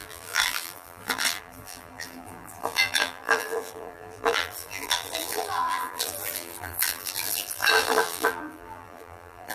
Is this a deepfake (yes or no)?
yes